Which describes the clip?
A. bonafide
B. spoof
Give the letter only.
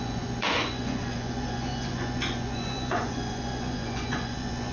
B